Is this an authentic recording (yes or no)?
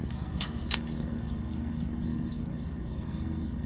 no